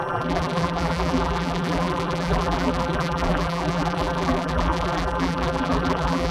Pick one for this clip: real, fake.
fake